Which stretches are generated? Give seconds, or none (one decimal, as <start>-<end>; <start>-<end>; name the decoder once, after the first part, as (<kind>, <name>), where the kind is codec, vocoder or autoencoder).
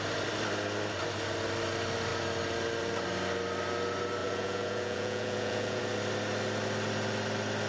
4.2-5.8 (vocoder, Vocos)